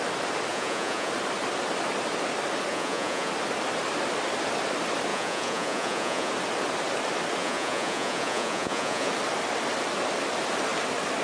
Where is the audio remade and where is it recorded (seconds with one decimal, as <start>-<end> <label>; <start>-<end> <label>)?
0.0-0.5 recorded; 0.5-1.1 remade; 1.1-2.7 recorded; 2.7-3.3 remade; 3.3-5.1 recorded; 5.1-6.3 remade; 6.3-7.4 recorded; 7.4-9.1 remade; 9.1-11.2 recorded